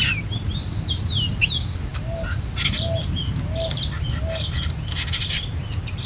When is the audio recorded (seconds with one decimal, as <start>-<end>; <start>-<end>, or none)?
1.0-1.9; 5.6-6.1